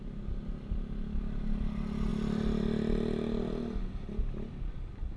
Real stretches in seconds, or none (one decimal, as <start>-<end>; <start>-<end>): 0.0-5.2

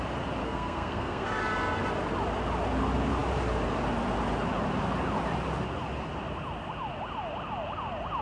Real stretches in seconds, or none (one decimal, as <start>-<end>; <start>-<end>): 0.0-0.4; 1.4-8.2